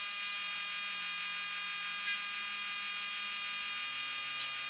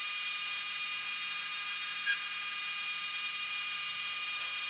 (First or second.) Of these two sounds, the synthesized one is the second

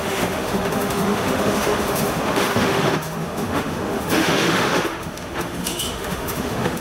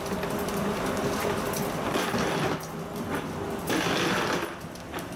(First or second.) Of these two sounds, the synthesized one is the first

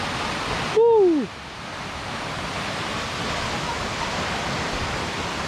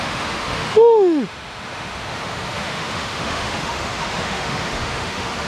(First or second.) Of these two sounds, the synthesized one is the second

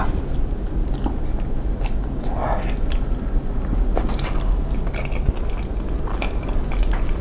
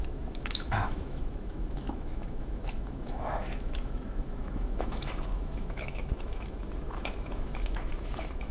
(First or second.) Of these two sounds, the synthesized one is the second